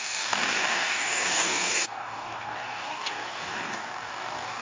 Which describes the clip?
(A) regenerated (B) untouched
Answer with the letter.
A